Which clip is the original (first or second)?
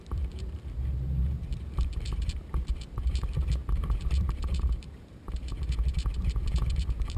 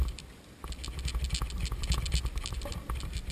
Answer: second